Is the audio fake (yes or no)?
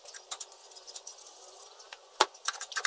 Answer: yes